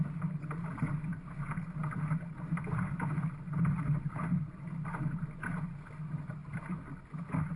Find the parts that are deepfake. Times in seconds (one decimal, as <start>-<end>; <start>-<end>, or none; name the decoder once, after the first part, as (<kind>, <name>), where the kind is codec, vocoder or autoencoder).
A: none